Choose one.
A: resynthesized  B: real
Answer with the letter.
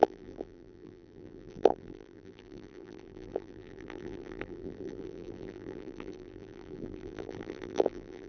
A